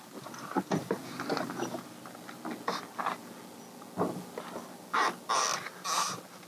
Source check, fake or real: real